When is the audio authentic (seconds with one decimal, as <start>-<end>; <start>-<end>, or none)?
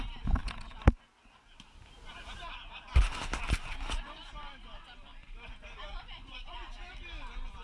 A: 0.0-5.9; 6.6-7.6